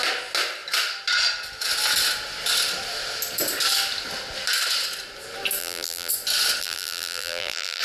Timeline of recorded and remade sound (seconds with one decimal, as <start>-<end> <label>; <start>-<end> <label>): 0.0-5.6 recorded; 5.6-6.1 remade; 6.1-6.6 recorded; 6.6-7.8 remade